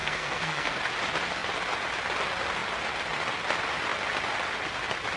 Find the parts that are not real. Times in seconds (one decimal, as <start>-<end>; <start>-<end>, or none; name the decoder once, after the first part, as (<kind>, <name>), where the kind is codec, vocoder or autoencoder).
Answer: 0.0-0.8 (codec, SNAC)